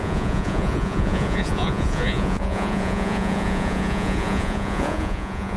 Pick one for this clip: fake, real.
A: fake